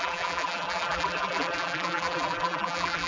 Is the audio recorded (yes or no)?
no